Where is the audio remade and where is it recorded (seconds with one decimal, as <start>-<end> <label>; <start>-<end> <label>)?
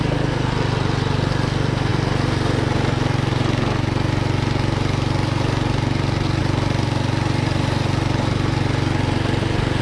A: 0.0-9.8 recorded